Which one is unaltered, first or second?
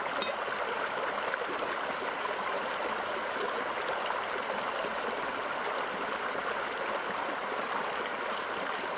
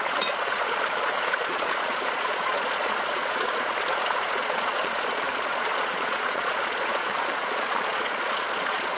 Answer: first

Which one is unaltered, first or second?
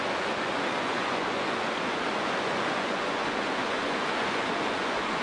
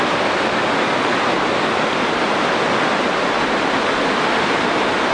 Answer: second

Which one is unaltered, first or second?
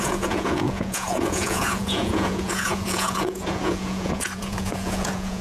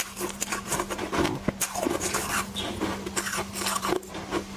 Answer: second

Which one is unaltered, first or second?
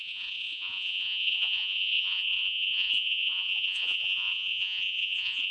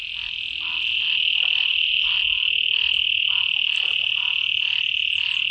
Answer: second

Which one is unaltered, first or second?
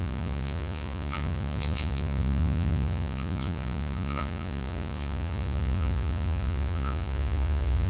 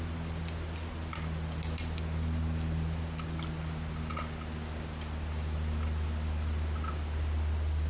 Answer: second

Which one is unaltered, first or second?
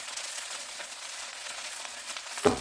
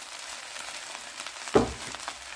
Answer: second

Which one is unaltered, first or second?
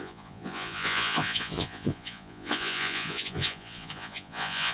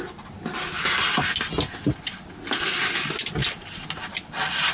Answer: second